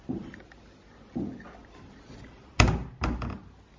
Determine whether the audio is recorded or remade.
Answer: recorded